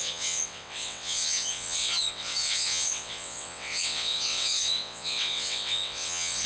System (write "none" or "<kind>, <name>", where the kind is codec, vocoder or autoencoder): vocoder, WaveNeXt